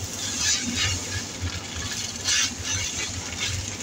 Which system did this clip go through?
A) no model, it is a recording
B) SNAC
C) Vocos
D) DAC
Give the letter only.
A